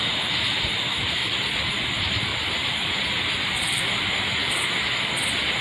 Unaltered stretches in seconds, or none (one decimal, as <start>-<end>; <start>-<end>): 1.2-1.7; 2.3-3.1; 4.4-5.6